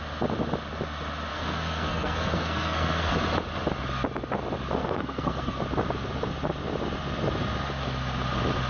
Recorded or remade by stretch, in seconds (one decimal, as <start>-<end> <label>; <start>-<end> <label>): 0.0-1.3 recorded; 1.3-3.1 remade; 3.1-4.8 recorded; 4.8-5.6 remade; 5.6-8.7 recorded